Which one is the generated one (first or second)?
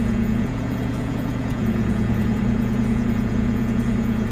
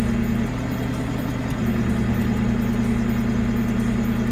first